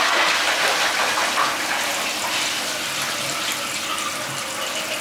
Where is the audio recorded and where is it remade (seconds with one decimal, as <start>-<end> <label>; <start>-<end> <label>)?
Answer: 0.0-5.0 recorded

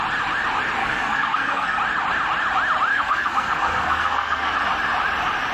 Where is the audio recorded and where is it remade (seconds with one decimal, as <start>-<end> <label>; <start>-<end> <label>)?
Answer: 0.0-0.8 recorded; 0.8-1.8 remade; 1.8-2.9 recorded; 2.9-4.5 remade; 4.5-5.5 recorded

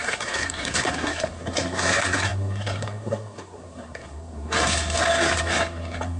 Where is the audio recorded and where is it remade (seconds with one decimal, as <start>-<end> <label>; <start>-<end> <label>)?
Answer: 0.0-6.2 remade

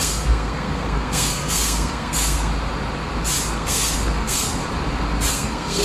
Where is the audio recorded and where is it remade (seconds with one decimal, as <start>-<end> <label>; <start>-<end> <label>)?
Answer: 0.0-2.5 remade; 2.5-3.5 recorded; 3.5-4.6 remade; 4.6-5.3 recorded; 5.3-5.8 remade